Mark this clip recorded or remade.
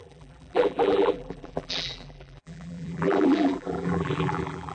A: remade